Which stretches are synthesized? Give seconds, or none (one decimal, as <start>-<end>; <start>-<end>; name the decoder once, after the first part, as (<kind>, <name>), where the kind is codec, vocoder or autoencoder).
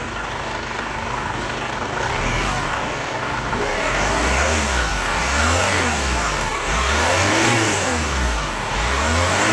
0.0-9.5 (codec, DAC)